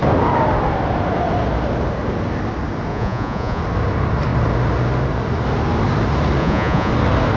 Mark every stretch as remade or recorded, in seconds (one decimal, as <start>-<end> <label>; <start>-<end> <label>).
0.0-2.9 recorded; 2.9-3.6 remade; 3.6-6.4 recorded; 6.4-6.9 remade; 6.9-7.4 recorded

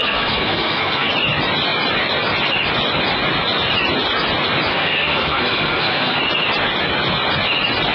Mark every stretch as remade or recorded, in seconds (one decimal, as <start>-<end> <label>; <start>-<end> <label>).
0.0-1.1 remade; 1.1-4.7 recorded; 4.7-6.2 remade; 6.2-7.9 recorded

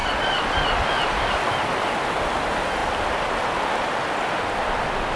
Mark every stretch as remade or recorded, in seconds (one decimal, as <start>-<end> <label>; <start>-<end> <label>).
0.0-5.2 recorded

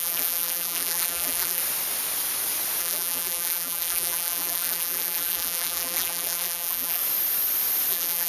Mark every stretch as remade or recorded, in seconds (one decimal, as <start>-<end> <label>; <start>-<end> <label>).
0.0-1.6 remade; 1.6-2.8 recorded; 2.8-7.0 remade; 7.0-7.9 recorded; 7.9-8.3 remade

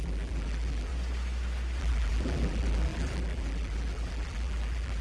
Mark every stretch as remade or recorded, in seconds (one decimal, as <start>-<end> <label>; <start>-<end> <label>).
0.0-0.9 remade; 0.9-1.8 recorded; 1.8-5.0 remade

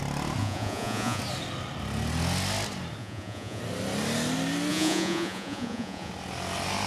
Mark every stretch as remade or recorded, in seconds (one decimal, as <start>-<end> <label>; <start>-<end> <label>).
0.0-0.4 recorded; 0.4-1.2 remade; 1.2-3.0 recorded; 3.0-3.6 remade; 3.6-4.7 recorded; 4.7-6.1 remade; 6.1-6.9 recorded